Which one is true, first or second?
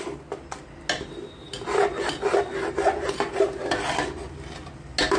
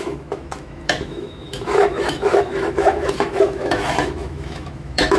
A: first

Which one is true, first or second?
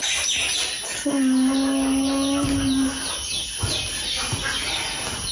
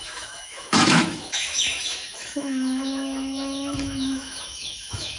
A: first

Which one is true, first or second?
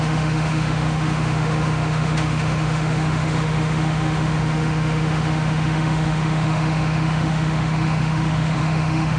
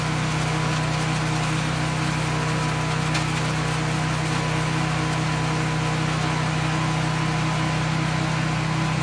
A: second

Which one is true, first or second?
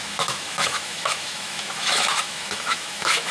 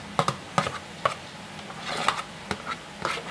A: second